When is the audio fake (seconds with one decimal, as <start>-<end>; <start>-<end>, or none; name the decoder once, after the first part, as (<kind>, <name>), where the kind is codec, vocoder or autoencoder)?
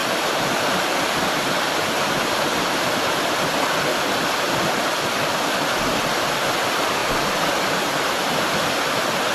0.0-3.3 (vocoder, BigVGAN v2); 3.9-4.5; 7.0-8.3